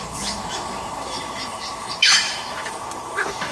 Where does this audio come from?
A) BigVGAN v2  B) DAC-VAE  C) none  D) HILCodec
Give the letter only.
B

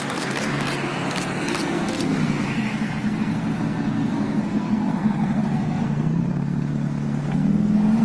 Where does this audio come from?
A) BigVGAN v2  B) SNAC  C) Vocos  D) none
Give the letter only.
B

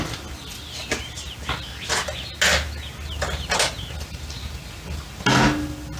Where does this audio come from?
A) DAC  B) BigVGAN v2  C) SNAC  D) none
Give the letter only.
D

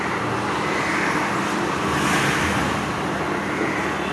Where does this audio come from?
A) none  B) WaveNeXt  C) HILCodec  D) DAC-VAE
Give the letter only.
A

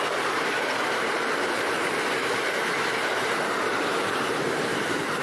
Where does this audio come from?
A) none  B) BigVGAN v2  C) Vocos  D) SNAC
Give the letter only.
B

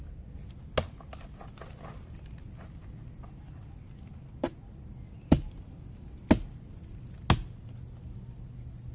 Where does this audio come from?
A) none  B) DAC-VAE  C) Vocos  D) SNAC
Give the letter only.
A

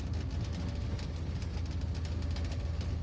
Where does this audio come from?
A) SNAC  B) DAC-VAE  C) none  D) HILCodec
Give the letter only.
C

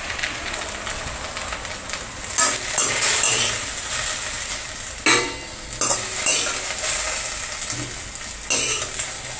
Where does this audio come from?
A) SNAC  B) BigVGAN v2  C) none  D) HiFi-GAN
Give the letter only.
C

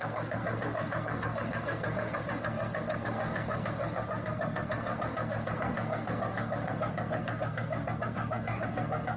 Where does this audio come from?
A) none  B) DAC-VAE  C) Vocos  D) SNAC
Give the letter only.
D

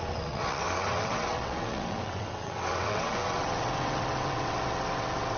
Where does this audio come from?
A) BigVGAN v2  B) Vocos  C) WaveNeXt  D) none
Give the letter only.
C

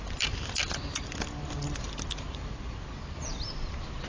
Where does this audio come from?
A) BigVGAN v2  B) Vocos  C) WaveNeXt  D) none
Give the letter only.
D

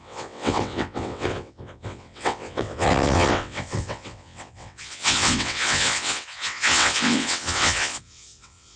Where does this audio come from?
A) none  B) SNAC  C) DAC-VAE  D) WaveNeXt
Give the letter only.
D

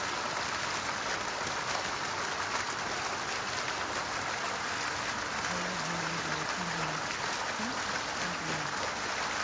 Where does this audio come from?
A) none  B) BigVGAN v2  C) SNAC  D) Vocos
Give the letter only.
A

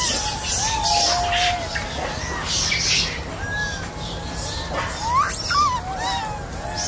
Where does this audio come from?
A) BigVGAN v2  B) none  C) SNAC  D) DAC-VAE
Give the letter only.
B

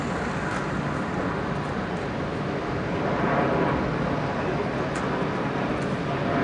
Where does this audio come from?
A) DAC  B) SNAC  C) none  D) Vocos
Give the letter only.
C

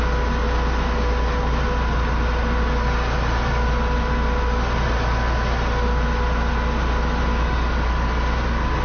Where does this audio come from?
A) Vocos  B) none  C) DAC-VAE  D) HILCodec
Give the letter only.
B